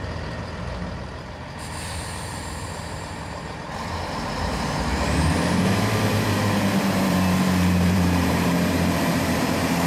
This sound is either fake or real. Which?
fake